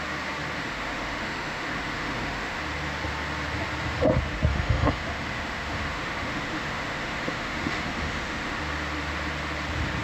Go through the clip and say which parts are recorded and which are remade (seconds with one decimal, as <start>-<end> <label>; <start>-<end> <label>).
0.0-0.6 recorded; 0.6-2.6 remade; 2.6-4.5 recorded; 4.5-8.6 remade; 8.6-10.0 recorded